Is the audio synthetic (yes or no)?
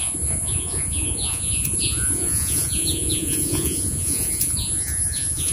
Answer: yes